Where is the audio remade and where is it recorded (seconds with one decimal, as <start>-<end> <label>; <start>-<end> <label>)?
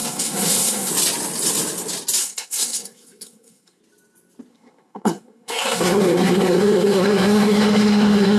0.0-0.9 remade; 0.9-2.2 recorded; 2.2-3.8 remade; 3.8-4.5 recorded; 4.5-8.4 remade